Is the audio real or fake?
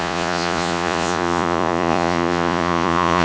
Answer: fake